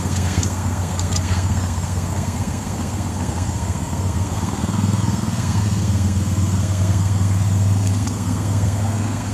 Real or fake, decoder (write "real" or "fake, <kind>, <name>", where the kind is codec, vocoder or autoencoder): fake, codec, SNAC